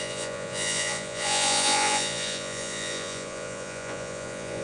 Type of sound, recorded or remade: remade